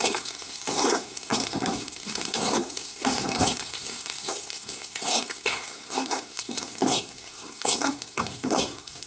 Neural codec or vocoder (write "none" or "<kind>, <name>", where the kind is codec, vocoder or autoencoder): codec, SNAC